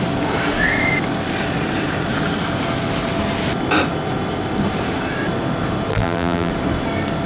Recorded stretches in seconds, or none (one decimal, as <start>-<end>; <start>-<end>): 0.0-5.9; 6.5-7.3